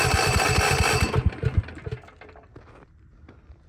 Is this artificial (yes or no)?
yes